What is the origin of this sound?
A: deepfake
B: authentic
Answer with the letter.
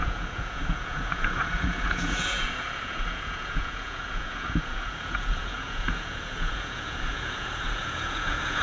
A